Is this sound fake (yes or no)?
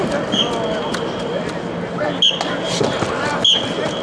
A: no